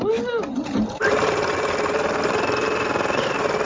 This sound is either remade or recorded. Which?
recorded